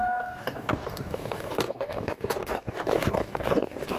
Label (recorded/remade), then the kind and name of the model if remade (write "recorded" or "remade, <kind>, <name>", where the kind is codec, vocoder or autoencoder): remade, codec, DAC